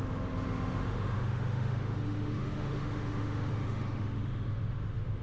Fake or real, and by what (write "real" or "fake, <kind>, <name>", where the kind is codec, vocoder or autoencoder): fake, autoencoder, DAC-VAE